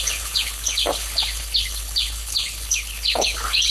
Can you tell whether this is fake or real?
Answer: fake